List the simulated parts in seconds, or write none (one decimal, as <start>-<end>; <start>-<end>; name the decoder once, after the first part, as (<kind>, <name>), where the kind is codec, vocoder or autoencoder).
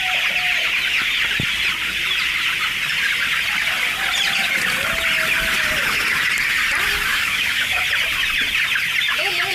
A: 7.1-7.8 (codec, DAC)